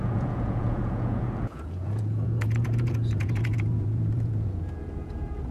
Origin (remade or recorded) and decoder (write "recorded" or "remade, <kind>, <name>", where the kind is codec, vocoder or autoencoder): remade, vocoder, Vocos